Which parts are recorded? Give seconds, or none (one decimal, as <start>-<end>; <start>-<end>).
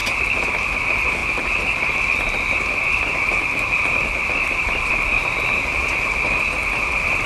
0.0-7.3